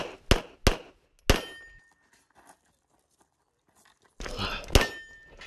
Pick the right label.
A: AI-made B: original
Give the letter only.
B